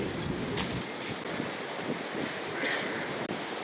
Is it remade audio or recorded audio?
recorded